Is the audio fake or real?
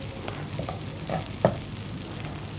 real